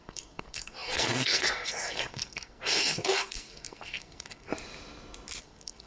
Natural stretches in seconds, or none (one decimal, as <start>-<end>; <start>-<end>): 4.5-5.4